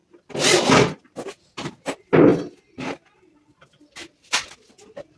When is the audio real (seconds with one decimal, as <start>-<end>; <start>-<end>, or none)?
0.0-5.2